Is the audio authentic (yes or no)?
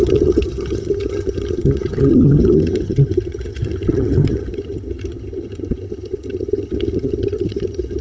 no